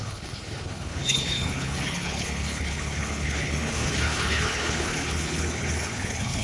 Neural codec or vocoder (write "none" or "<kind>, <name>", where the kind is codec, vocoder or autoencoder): codec, HILCodec